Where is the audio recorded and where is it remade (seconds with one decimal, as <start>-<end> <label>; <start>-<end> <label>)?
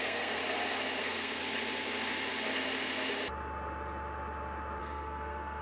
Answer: 0.0-0.4 remade; 0.4-1.0 recorded; 1.0-1.4 remade; 1.4-4.8 recorded; 4.8-5.6 remade